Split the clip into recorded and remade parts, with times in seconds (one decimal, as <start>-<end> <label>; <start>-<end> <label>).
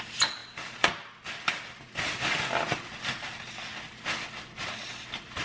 0.0-5.4 recorded